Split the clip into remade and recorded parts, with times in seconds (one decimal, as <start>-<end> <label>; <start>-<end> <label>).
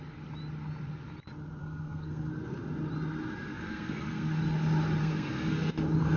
0.0-1.6 recorded; 1.6-2.3 remade; 2.3-3.5 recorded; 3.5-4.4 remade; 4.4-5.0 recorded; 5.0-5.7 remade; 5.7-6.2 recorded